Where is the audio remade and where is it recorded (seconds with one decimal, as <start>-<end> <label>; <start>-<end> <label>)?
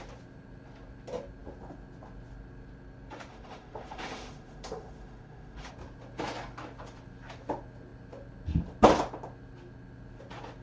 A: 0.0-3.3 recorded; 3.3-5.7 remade; 5.7-10.6 recorded